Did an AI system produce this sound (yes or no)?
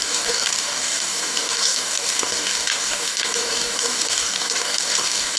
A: yes